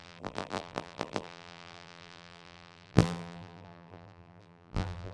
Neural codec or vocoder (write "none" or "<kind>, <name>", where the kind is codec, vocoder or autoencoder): vocoder, BigVGAN v2